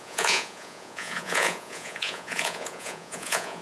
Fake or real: fake